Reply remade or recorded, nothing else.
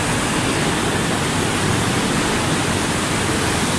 remade